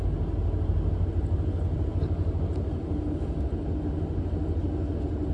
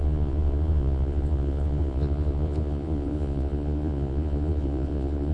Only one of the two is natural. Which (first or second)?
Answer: first